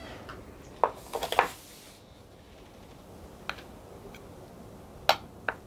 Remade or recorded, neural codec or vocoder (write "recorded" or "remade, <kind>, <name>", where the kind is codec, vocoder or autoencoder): recorded